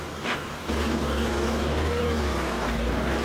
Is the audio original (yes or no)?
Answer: no